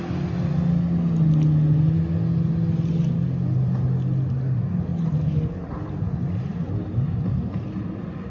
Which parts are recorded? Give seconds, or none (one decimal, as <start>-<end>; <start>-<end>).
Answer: 0.0-8.3